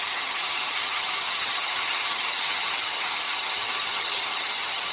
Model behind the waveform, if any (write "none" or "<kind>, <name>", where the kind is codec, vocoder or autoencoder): vocoder, HiFi-GAN